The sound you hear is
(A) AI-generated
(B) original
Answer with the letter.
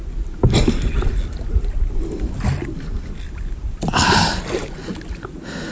B